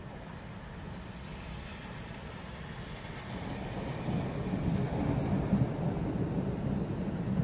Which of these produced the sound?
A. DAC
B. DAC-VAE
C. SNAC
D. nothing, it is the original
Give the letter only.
D